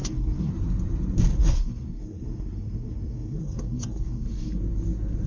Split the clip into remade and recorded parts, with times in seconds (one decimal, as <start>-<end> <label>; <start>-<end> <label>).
0.0-0.5 remade; 0.5-1.4 recorded; 1.4-4.6 remade; 4.6-5.3 recorded